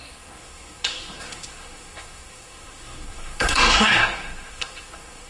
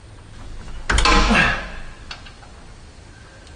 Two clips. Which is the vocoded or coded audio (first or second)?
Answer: first